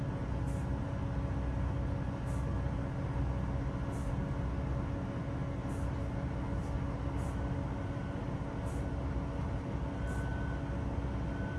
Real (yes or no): yes